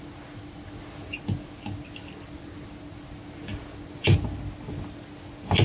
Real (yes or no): yes